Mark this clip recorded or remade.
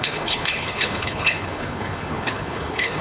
remade